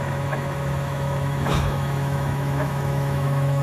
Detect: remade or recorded remade